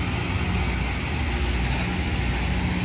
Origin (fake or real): real